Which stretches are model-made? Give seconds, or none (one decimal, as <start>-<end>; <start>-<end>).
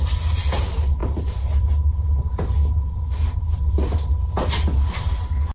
none